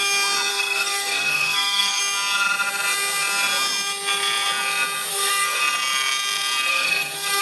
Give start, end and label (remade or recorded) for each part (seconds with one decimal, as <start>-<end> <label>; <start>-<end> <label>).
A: 0.0-0.5 recorded; 0.5-2.0 remade; 2.0-5.1 recorded; 5.1-5.6 remade; 5.6-6.7 recorded; 6.7-7.4 remade